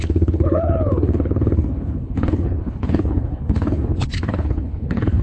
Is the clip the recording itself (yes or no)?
no